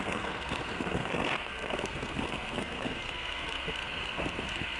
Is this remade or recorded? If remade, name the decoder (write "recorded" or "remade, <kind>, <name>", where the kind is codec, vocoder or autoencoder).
remade, codec, SNAC